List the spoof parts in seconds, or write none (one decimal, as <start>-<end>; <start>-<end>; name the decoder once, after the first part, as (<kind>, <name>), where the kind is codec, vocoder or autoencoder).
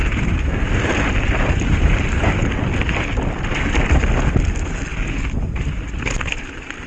0.0-2.5 (vocoder, BigVGAN v2)